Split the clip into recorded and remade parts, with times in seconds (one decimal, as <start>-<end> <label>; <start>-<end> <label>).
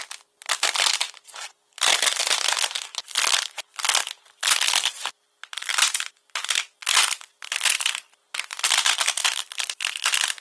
0.0-10.4 recorded